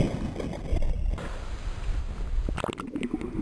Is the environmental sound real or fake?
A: real